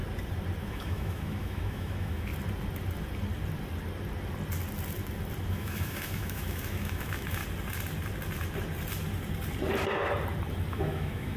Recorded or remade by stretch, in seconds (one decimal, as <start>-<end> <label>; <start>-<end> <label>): 0.0-0.6 recorded; 0.6-2.3 remade; 2.3-5.5 recorded; 5.5-7.4 remade; 7.4-10.7 recorded; 10.7-11.4 remade